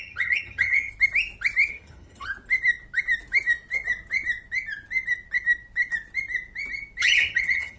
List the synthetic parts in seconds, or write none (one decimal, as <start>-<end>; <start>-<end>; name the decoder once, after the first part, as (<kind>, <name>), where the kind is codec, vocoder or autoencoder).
0.0-0.9 (vocoder, HiFi-GAN); 1.7-2.3; 7.0-7.8

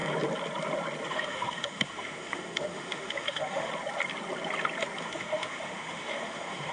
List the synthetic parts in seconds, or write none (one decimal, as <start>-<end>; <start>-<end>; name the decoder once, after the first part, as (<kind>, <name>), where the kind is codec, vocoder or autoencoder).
1.1-3.7 (autoencoder, DAC-VAE); 5.0-6.7

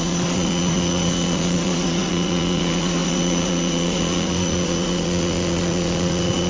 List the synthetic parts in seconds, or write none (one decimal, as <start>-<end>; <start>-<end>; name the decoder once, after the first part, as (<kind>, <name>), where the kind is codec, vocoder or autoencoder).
0.0-6.5 (vocoder, Vocos)

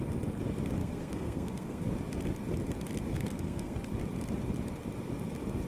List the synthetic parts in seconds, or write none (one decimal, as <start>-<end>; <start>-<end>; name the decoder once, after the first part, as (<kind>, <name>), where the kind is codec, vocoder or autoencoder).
0.8-1.9 (codec, SNAC); 3.1-3.8

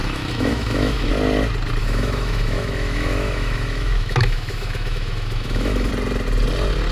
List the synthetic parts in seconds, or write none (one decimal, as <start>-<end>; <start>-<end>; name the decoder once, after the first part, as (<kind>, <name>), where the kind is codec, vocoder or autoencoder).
0.0-1.1 (autoencoder, DAC-VAE); 1.8-5.9

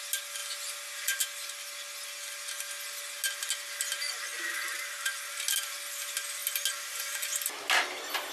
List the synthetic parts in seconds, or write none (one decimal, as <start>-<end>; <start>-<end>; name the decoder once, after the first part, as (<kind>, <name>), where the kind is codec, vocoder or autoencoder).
none

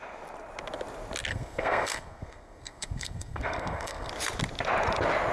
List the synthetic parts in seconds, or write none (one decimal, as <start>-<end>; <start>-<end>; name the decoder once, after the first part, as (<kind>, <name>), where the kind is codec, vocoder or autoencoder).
1.3-4.1 (codec, SNAC)

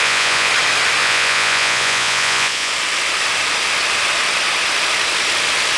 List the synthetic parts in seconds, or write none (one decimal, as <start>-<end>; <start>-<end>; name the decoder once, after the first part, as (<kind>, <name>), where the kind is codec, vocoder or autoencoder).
0.0-0.5 (vocoder, Vocos); 1.0-2.7